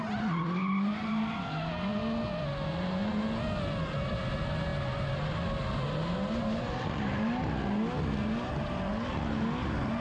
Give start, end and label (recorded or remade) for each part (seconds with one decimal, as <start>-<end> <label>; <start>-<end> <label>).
0.0-10.0 recorded